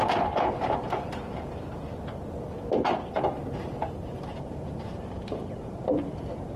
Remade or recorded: remade